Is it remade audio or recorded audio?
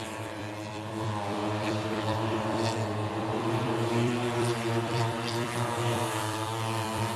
remade